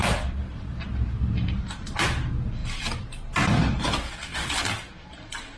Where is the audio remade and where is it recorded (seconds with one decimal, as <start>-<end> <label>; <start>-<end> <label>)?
0.0-0.8 remade; 0.8-2.6 recorded; 2.6-4.1 remade; 4.1-5.6 recorded